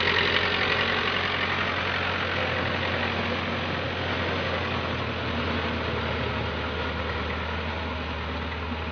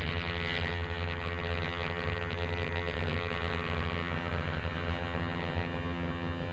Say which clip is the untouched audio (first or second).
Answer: first